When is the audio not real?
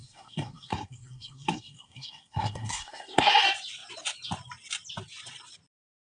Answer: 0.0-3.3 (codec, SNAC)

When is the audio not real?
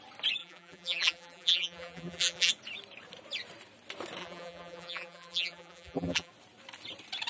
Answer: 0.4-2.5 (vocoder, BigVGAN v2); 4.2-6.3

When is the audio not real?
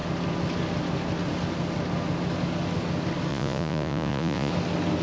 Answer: 3.3-4.5 (vocoder, Vocos)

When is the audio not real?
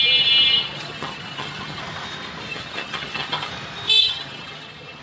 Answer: 0.6-1.8 (vocoder, HiFi-GAN); 2.5-3.5; 4.0-5.0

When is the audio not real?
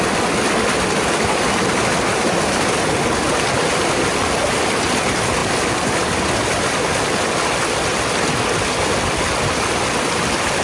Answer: none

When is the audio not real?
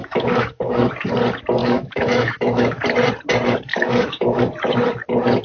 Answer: 0.0-0.9 (autoencoder, DAC-VAE); 1.6-2.8; 3.7-4.4